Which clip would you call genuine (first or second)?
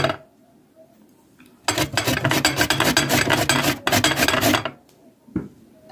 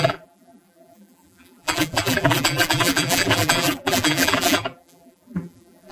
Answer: first